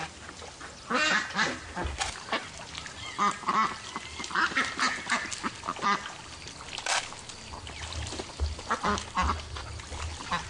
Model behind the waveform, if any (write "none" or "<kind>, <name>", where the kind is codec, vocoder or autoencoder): none